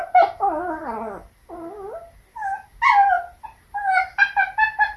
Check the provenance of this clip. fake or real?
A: real